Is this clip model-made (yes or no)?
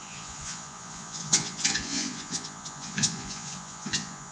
yes